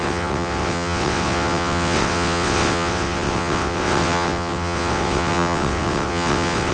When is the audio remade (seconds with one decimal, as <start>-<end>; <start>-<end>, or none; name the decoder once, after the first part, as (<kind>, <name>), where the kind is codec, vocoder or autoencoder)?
0.0-6.7 (vocoder, WaveNeXt)